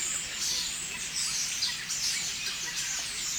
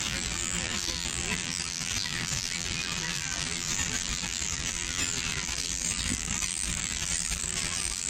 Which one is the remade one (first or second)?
second